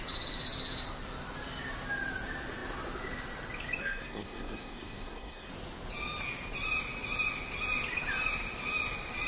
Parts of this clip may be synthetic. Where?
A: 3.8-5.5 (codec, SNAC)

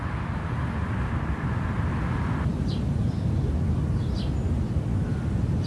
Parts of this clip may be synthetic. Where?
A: none

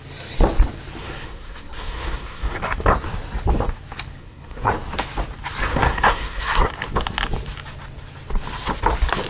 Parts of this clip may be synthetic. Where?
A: 1.0-2.6 (codec, SNAC); 4.2-4.7; 5.6-6.7

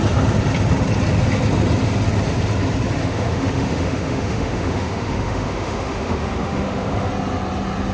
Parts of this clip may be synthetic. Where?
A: 3.0-7.1 (autoencoder, DAC-VAE)

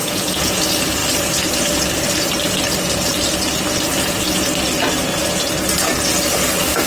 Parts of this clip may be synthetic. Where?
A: 0.0-0.6 (vocoder, Vocos)

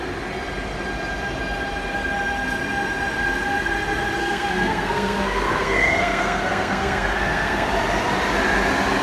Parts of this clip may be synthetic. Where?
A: 4.2-7.7 (codec, SNAC)